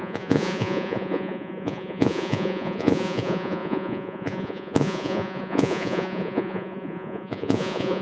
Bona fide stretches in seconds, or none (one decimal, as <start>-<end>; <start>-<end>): none